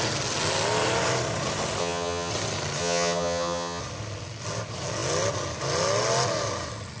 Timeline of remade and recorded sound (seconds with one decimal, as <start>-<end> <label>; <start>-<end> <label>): 0.0-1.8 recorded; 1.8-2.3 remade; 2.3-2.8 recorded; 2.8-3.8 remade; 3.8-7.0 recorded